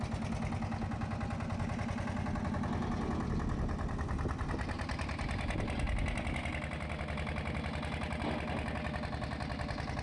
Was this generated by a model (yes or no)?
no